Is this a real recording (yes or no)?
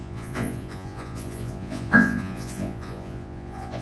no